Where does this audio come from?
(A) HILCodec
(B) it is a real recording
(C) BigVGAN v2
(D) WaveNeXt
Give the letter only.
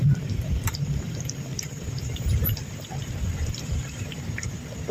C